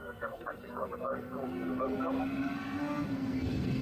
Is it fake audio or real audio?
fake